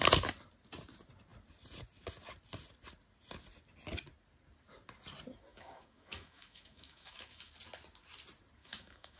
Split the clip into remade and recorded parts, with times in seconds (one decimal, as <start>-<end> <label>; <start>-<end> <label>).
0.0-5.5 recorded; 5.5-7.5 remade; 7.5-8.6 recorded; 8.6-9.2 remade